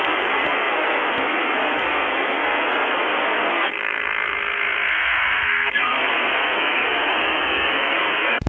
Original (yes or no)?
no